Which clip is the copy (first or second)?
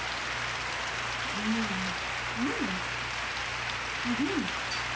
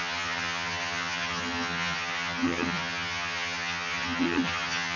second